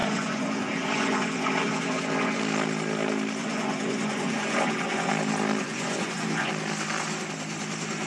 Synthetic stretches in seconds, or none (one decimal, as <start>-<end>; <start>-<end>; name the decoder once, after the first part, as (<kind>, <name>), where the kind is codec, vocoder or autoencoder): 0.0-2.4 (vocoder, Vocos); 3.4-5.1; 5.6-6.5